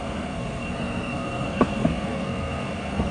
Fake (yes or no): yes